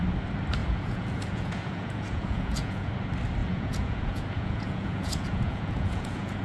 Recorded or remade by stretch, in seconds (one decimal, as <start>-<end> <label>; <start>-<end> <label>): 0.0-0.6 recorded; 0.6-2.9 remade; 2.9-3.4 recorded; 3.4-6.4 remade